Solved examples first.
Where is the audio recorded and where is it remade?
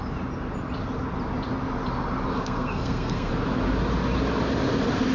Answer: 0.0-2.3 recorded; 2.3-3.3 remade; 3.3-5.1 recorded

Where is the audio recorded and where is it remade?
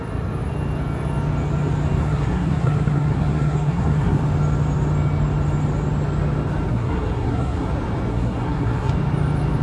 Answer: 0.0-2.0 recorded; 2.0-4.2 remade; 4.2-6.7 recorded; 6.7-7.7 remade; 7.7-8.1 recorded; 8.1-8.9 remade; 8.9-9.6 recorded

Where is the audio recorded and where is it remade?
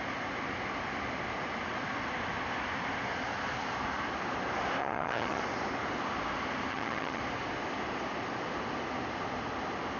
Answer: 0.0-4.8 recorded; 4.8-5.4 remade; 5.4-6.7 recorded; 6.7-7.2 remade; 7.2-10.0 recorded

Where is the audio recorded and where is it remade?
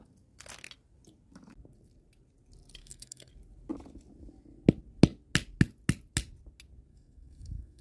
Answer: 0.0-2.8 recorded; 2.8-3.3 remade; 3.3-6.9 recorded; 6.9-7.8 remade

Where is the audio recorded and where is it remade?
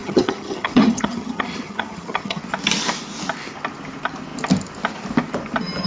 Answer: 0.0-2.4 remade; 2.4-5.9 recorded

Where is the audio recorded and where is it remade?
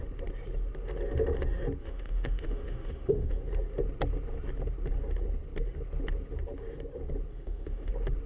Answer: 0.0-1.8 recorded; 1.8-3.4 remade; 3.4-7.3 recorded; 7.3-7.9 remade; 7.9-8.3 recorded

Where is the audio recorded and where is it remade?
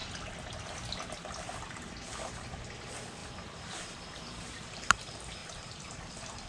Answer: 0.0-3.2 recorded; 3.2-5.0 remade; 5.0-5.4 recorded; 5.4-6.1 remade; 6.1-6.5 recorded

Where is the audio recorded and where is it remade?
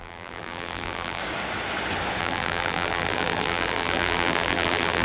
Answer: 0.0-1.2 remade; 1.2-2.2 recorded; 2.2-5.0 remade